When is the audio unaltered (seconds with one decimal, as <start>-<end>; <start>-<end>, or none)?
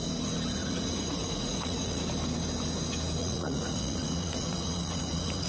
0.0-0.6; 2.0-3.2